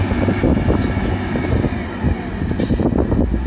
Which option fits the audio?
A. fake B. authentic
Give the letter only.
B